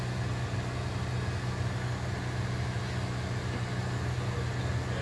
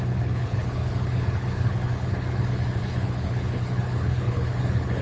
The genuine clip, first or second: first